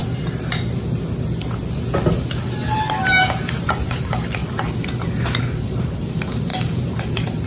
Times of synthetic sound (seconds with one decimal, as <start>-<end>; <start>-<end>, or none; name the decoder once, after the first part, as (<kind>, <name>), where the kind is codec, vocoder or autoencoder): 3.1-4.4 (vocoder, BigVGAN v2); 5.4-7.5